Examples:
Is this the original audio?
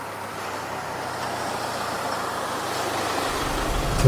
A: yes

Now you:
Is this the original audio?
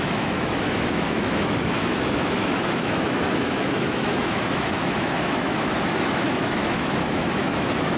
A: no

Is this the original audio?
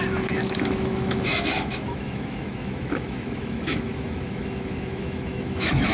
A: no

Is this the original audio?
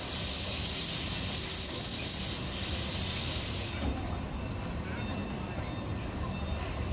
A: yes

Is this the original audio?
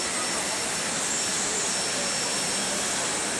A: yes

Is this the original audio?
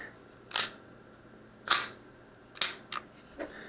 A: yes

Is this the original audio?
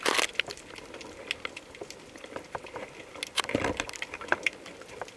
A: yes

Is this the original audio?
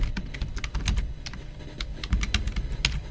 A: yes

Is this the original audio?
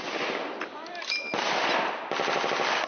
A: yes